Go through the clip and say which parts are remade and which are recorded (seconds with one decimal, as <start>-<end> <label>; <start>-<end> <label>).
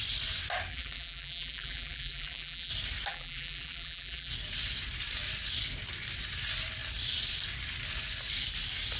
0.0-0.7 recorded; 0.7-2.7 remade; 2.7-3.1 recorded; 3.1-4.3 remade; 4.3-9.0 recorded